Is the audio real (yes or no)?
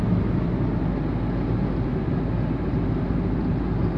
yes